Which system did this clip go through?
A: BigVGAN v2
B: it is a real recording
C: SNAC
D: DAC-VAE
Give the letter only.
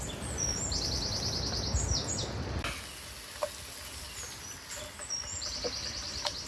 B